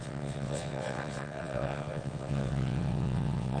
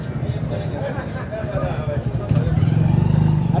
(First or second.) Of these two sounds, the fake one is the first